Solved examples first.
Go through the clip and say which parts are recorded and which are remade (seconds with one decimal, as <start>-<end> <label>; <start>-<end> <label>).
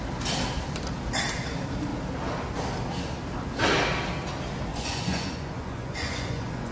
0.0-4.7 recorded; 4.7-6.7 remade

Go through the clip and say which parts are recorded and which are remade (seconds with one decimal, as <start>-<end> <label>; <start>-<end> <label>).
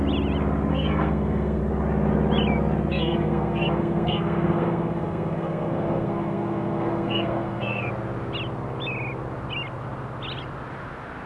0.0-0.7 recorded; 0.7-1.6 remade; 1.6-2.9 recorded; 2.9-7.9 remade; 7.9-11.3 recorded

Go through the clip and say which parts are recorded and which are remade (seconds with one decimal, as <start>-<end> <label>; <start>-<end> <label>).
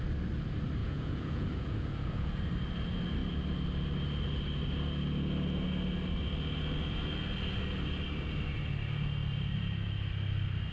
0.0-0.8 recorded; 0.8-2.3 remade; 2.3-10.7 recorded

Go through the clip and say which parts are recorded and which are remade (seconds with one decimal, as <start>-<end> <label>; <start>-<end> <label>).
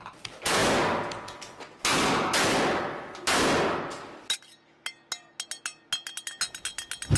0.0-7.2 recorded